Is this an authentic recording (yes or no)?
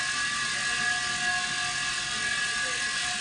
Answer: yes